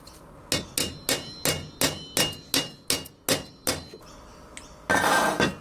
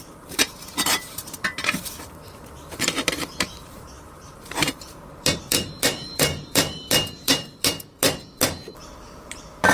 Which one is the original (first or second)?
first